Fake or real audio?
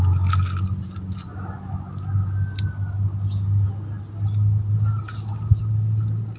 real